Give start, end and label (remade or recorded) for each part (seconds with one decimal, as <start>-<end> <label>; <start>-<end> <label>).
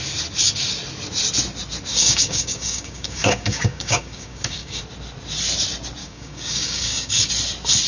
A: 0.0-1.9 recorded; 1.9-4.8 remade; 4.8-6.0 recorded; 6.0-7.3 remade; 7.3-7.9 recorded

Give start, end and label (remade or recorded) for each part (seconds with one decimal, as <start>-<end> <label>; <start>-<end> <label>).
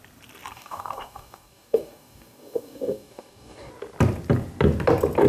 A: 0.0-0.5 recorded; 0.5-3.7 remade; 3.7-5.3 recorded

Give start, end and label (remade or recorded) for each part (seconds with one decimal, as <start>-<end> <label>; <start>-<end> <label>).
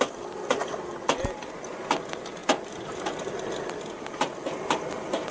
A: 0.0-5.3 recorded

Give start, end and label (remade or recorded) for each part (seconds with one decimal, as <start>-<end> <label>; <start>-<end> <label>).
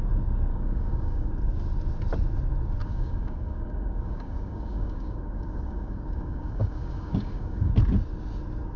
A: 0.0-0.5 recorded; 0.5-1.3 remade; 1.3-2.8 recorded; 2.8-7.7 remade; 7.7-8.8 recorded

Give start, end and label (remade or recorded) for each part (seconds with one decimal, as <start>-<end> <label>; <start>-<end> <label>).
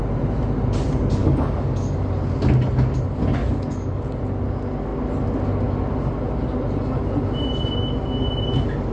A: 0.0-1.2 recorded; 1.2-2.0 remade; 2.0-3.4 recorded; 3.4-4.0 remade; 4.0-8.9 recorded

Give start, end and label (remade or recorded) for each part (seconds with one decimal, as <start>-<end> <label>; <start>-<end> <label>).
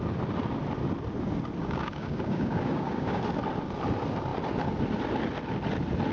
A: 0.0-1.6 recorded; 1.6-3.2 remade; 3.2-6.1 recorded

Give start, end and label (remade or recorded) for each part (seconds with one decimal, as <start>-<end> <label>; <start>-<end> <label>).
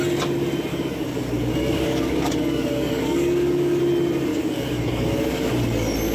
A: 0.0-0.7 recorded; 0.7-3.8 remade; 3.8-4.3 recorded; 4.3-5.5 remade; 5.5-6.1 recorded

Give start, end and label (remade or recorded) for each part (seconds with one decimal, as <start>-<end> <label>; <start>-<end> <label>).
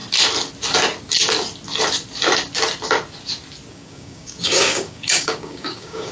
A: 0.0-3.7 recorded; 3.7-6.1 remade